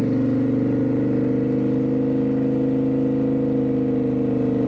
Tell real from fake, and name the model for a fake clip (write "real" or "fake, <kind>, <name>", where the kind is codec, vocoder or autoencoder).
real